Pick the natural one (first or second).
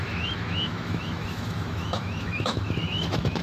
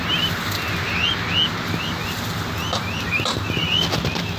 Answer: second